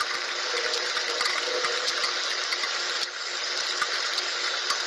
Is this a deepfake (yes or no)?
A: no